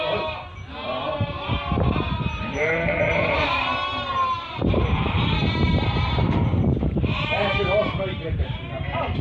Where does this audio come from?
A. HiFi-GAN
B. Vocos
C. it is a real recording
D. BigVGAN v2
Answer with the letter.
D